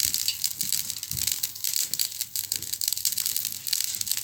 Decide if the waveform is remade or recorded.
recorded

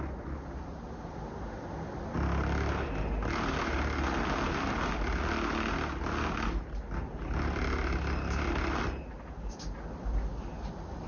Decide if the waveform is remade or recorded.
recorded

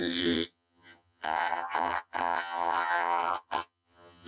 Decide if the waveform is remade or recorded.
remade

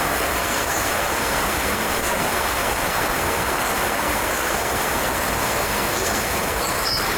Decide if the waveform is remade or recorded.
remade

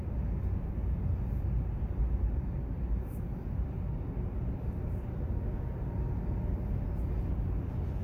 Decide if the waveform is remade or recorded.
recorded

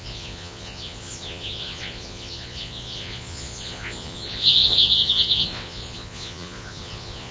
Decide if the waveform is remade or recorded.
remade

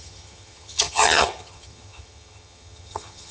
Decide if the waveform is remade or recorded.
remade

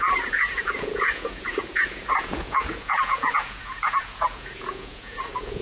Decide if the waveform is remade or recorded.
remade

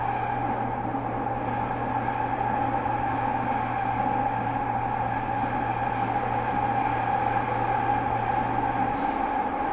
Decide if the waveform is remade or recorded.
recorded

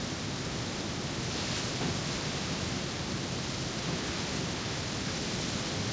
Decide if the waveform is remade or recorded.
recorded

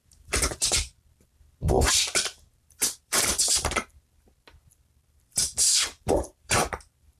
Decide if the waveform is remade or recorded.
remade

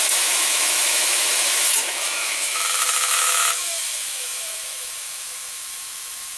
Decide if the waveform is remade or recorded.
remade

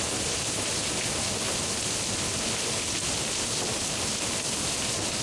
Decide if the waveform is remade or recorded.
recorded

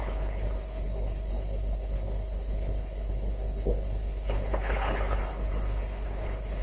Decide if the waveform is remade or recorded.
remade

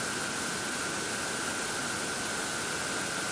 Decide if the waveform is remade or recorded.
recorded